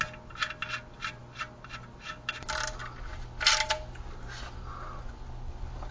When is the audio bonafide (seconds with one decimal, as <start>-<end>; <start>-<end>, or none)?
0.0-5.9